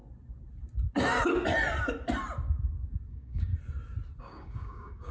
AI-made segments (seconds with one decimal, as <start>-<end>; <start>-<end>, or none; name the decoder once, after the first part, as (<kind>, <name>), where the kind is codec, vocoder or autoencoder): 3.1-3.5 (codec, DAC); 4.2-5.1